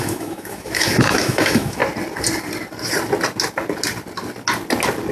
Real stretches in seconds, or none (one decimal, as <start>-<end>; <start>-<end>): 1.8-5.1